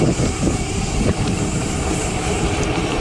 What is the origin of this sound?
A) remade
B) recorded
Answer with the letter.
A